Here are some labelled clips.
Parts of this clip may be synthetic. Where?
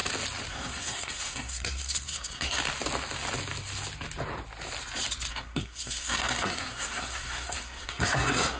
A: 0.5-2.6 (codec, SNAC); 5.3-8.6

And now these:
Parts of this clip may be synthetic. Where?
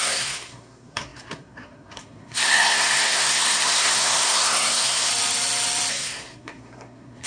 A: 0.0-5.1 (codec, SNAC); 5.9-7.3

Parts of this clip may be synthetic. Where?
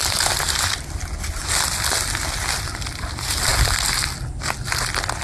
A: none